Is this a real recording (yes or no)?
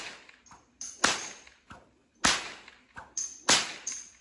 yes